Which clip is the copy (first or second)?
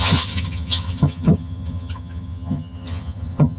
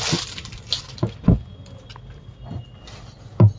first